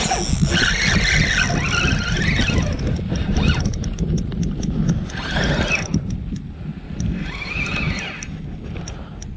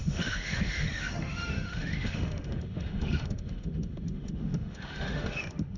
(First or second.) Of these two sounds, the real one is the first